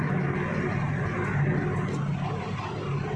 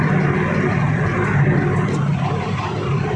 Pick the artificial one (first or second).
second